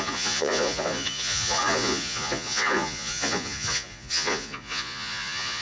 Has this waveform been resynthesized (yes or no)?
yes